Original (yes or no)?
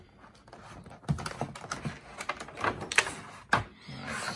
yes